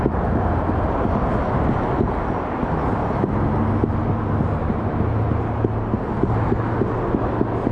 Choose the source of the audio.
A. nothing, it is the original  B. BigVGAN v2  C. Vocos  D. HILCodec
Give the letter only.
A